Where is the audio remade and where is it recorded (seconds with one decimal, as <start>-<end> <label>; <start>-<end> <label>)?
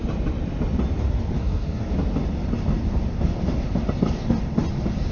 0.0-1.4 recorded; 1.4-1.9 remade; 1.9-5.1 recorded